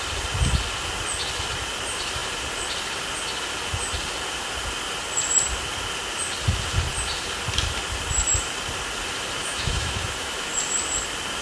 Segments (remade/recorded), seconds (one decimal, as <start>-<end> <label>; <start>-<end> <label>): 0.0-9.4 recorded; 9.4-10.5 remade; 10.5-11.4 recorded